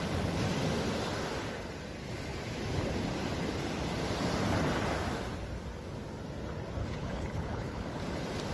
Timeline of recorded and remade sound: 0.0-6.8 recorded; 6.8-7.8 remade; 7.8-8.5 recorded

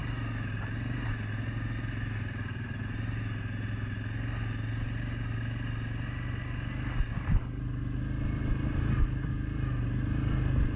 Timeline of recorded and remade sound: 0.0-10.8 recorded

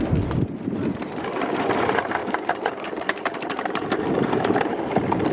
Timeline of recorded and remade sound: 0.0-2.2 recorded; 2.2-4.8 remade; 4.8-5.3 recorded

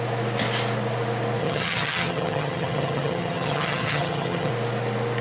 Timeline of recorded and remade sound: 0.0-1.4 recorded; 1.4-4.5 remade; 4.5-5.2 recorded

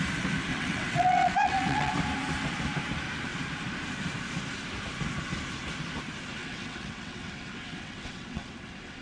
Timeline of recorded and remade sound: 0.0-0.5 recorded; 0.5-1.9 remade; 1.9-6.4 recorded; 6.4-9.0 remade

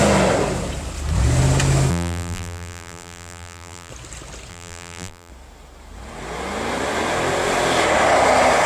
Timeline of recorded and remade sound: 0.0-1.9 recorded; 1.9-3.9 remade; 3.9-4.5 recorded; 4.5-5.3 remade; 5.3-8.7 recorded

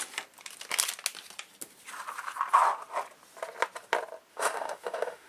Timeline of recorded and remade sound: 0.0-4.3 recorded; 4.3-5.3 remade

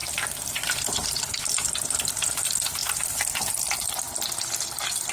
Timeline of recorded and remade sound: 0.0-1.4 remade; 1.4-5.1 recorded